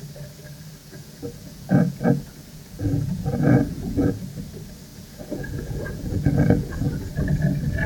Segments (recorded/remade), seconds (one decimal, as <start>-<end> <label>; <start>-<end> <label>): 0.0-0.8 recorded; 0.8-4.1 remade; 4.1-4.9 recorded; 4.9-7.1 remade; 7.1-7.9 recorded